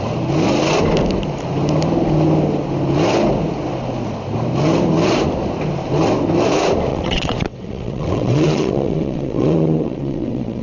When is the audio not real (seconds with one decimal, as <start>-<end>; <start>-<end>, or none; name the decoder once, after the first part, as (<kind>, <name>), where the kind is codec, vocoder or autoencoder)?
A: 6.9-10.6 (vocoder, WaveNeXt)